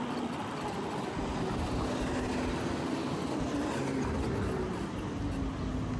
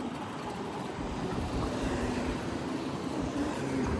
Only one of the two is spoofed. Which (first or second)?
second